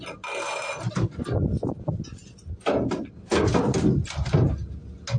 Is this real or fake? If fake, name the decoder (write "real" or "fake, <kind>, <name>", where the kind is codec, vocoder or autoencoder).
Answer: real